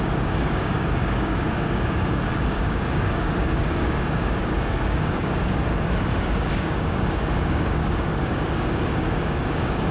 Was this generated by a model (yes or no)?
yes